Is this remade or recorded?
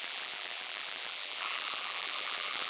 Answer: remade